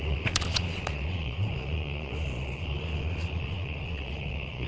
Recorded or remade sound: remade